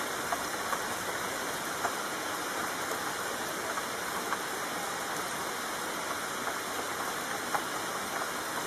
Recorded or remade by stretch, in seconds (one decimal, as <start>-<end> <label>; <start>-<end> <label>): 0.0-8.7 recorded